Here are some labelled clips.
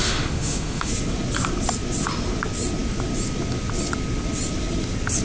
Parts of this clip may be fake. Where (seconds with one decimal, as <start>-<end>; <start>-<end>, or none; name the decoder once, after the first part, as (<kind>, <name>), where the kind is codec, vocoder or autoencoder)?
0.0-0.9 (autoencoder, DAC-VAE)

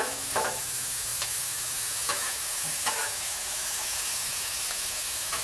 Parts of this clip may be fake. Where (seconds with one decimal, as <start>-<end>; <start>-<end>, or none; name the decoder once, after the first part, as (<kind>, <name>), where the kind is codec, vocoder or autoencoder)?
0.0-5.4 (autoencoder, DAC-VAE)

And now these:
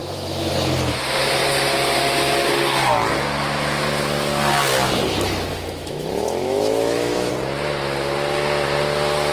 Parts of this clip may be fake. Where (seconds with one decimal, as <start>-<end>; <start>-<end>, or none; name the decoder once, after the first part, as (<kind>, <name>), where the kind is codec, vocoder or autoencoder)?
0.0-0.5 (autoencoder, DAC-VAE); 5.5-7.3

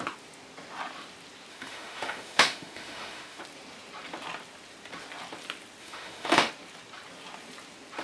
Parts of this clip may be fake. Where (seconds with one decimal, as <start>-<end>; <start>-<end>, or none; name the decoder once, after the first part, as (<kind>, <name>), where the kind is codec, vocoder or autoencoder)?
1.5-3.4 (autoencoder, DAC-VAE); 5.8-6.5